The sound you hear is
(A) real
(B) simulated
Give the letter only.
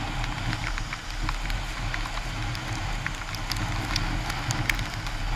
A